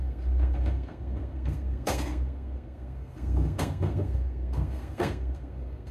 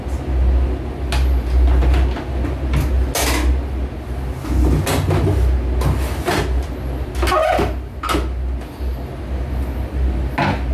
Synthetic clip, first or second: first